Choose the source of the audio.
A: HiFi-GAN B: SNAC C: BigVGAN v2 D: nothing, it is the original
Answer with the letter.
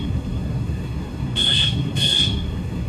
B